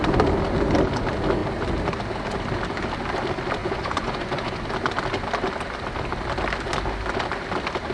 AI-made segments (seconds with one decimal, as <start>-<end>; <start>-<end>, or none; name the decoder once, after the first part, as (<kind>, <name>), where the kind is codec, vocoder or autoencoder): 3.6-4.6 (vocoder, Vocos)